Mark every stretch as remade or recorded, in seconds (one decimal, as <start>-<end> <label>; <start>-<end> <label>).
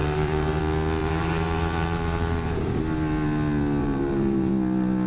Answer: 0.0-0.6 remade; 0.6-1.0 recorded; 1.0-2.8 remade; 2.8-3.8 recorded; 3.8-4.5 remade; 4.5-5.1 recorded